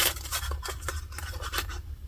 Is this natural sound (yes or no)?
no